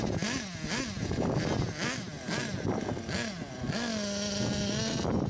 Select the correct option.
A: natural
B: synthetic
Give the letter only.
A